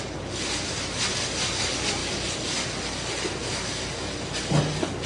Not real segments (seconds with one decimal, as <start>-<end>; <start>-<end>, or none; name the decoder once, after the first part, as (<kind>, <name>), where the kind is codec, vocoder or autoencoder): none